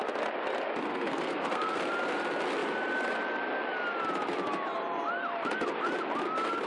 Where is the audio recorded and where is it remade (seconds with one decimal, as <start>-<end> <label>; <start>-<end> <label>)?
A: 0.0-0.9 recorded; 0.9-1.8 remade; 1.8-6.7 recorded